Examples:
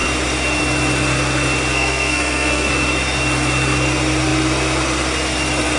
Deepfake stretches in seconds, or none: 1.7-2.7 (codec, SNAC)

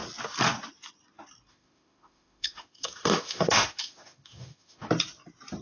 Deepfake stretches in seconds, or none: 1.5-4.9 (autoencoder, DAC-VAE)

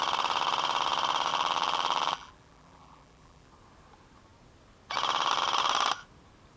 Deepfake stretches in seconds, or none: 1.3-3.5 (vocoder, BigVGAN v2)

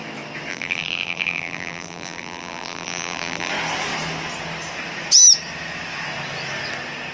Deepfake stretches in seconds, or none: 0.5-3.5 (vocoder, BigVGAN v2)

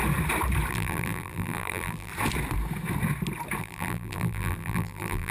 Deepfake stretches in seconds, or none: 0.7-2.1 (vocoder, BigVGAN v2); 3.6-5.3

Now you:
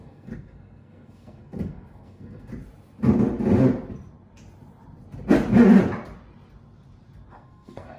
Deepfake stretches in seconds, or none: 0.0-2.5 (codec, SNAC); 7.3-8.0

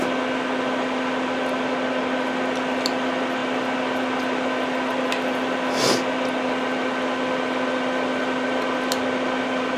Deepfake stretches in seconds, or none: none

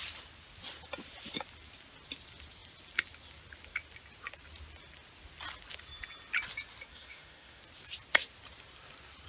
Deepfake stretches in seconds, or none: 6.9-7.6 (autoencoder, DAC-VAE)